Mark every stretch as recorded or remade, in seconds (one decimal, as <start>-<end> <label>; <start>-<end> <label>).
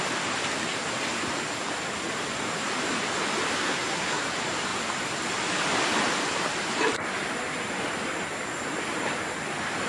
0.0-3.6 recorded; 3.6-4.2 remade; 4.2-9.9 recorded